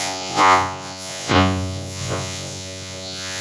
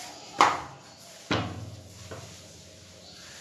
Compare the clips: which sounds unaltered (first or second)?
second